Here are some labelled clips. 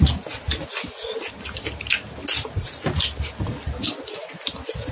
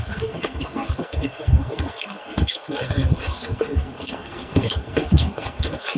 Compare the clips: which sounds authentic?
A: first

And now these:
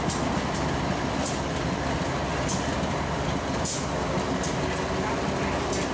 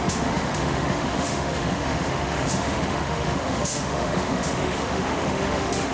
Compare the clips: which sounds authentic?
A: first